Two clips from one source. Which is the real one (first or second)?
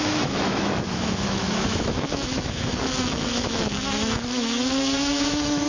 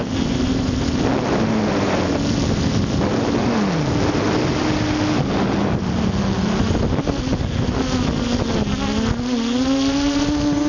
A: second